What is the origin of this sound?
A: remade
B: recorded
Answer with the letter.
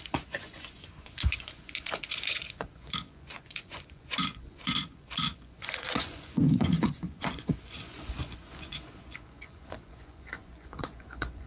A